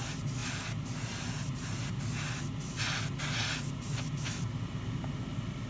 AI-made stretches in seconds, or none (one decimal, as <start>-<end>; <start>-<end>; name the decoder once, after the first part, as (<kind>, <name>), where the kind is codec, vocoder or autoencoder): none